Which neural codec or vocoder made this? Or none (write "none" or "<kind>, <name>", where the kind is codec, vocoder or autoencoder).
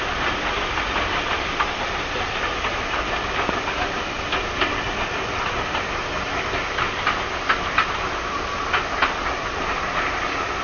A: none